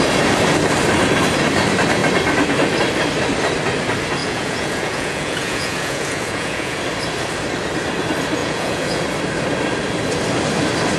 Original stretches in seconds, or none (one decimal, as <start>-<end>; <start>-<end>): 0.0-4.2; 6.8-8.4; 9.0-11.0